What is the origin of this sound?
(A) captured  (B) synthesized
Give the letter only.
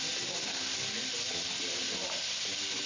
A